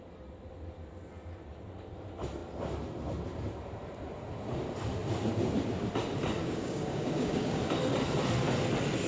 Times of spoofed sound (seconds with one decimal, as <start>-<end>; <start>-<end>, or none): 6.4-7.6

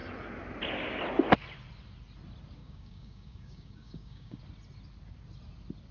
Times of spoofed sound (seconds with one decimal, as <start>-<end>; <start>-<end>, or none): 2.6-4.4

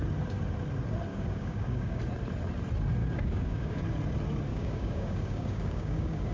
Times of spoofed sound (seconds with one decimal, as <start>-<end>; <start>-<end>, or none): 1.1-2.0; 3.0-3.8; 4.5-6.3